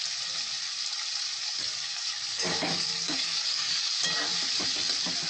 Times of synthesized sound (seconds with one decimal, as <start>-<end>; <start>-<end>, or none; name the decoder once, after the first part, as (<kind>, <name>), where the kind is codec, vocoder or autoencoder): 1.4-4.0 (codec, DAC)